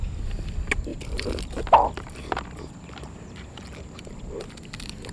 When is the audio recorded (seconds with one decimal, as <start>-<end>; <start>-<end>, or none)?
0.0-0.9; 1.5-5.1